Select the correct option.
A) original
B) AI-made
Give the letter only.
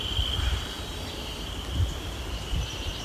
A